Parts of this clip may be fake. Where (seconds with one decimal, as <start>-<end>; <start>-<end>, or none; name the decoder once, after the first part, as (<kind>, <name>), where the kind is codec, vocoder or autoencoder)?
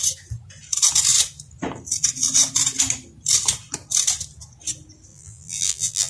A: 5.1-6.1 (vocoder, BigVGAN v2)